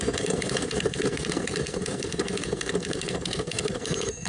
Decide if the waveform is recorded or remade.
remade